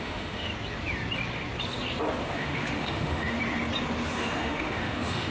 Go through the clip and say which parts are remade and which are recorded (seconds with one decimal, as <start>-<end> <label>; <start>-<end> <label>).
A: 0.0-0.5 remade; 0.5-2.2 recorded; 2.2-3.4 remade; 3.4-4.1 recorded; 4.1-5.3 remade